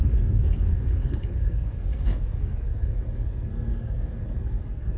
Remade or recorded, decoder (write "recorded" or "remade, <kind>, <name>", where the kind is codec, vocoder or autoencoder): remade, codec, SNAC